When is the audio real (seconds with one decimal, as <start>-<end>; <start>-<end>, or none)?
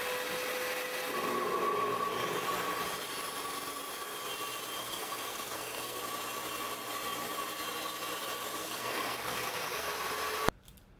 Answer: 0.0-4.8; 6.0-8.6; 9.9-11.0